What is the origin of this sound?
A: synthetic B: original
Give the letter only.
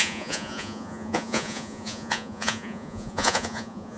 A